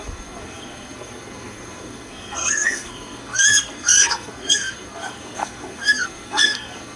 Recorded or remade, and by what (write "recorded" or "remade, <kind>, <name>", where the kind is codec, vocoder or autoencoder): remade, codec, SNAC